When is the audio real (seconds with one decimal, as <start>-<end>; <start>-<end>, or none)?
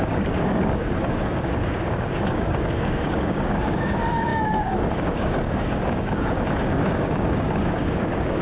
none